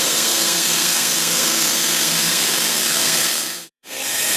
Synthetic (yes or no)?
yes